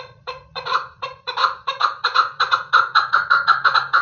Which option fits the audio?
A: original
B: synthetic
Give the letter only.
B